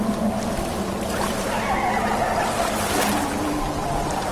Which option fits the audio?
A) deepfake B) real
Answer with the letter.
B